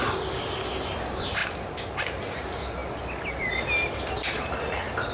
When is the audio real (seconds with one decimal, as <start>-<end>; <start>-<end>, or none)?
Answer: 0.0-5.1